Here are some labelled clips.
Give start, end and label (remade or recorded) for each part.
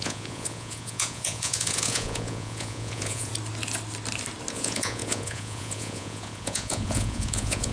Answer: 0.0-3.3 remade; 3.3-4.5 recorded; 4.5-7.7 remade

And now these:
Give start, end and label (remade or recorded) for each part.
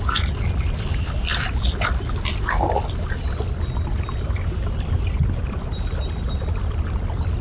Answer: 0.0-7.4 recorded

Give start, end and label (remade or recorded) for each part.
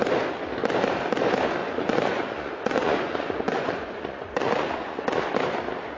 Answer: 0.0-1.6 recorded; 1.6-5.2 remade; 5.2-6.0 recorded